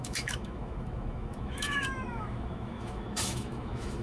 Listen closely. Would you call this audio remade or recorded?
remade